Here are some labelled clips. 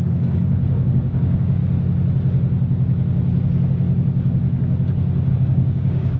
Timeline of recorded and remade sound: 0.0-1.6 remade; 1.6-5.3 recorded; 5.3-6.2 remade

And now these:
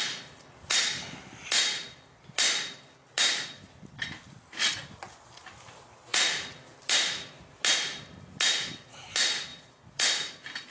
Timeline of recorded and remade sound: 0.0-10.7 recorded